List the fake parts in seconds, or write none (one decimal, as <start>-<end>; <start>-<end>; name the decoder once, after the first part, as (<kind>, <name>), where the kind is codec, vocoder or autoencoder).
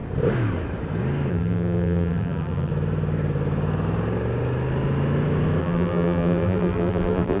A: 1.3-2.7 (vocoder, BigVGAN v2); 5.6-7.4